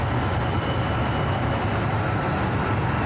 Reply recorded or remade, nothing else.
recorded